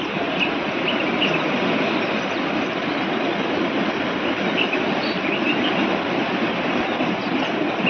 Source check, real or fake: real